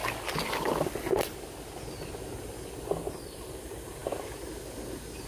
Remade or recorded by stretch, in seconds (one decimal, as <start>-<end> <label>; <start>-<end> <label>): 0.0-3.2 recorded; 3.2-4.0 remade; 4.0-5.3 recorded

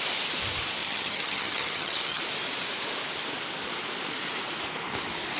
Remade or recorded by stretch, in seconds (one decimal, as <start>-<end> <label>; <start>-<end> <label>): 0.0-0.8 recorded; 0.8-2.2 remade; 2.2-5.4 recorded

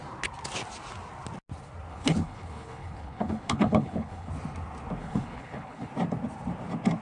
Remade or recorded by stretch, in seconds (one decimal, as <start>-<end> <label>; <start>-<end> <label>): 0.0-1.9 recorded; 1.9-4.3 remade; 4.3-5.0 recorded; 5.0-5.9 remade; 5.9-7.0 recorded

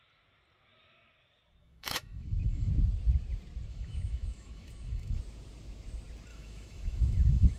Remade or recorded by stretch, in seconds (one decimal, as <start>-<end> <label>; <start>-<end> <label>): 0.0-1.6 recorded; 1.6-2.7 remade; 2.7-3.7 recorded; 3.7-5.2 remade; 5.2-6.3 recorded; 6.3-7.6 remade

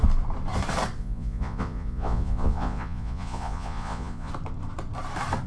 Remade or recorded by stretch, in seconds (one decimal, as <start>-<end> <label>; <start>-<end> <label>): 0.0-1.0 recorded; 1.0-4.3 remade; 4.3-5.5 recorded